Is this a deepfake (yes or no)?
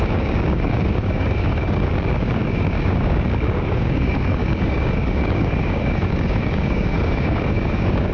yes